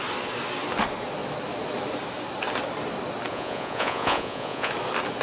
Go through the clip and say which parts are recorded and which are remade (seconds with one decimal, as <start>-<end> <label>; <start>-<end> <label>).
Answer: 0.0-3.3 recorded; 3.3-4.7 remade; 4.7-5.2 recorded